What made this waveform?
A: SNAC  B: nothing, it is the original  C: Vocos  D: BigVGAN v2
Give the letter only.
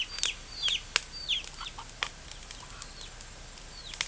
B